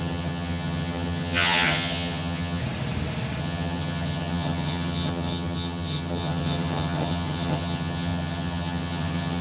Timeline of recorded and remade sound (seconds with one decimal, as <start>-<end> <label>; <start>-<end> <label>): 0.0-2.6 remade; 2.6-3.4 recorded; 3.4-9.4 remade